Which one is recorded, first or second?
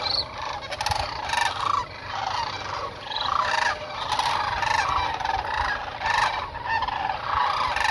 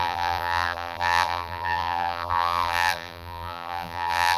first